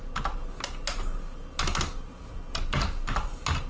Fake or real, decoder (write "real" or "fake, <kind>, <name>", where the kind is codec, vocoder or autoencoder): real